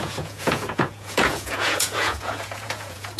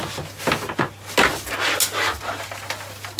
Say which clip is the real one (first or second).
second